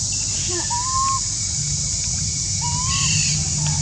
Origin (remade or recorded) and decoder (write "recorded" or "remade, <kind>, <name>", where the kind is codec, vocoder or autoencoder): recorded